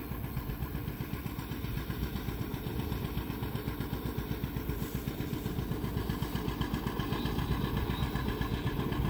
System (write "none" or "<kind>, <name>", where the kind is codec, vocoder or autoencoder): none